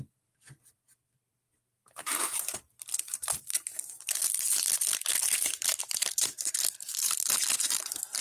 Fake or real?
fake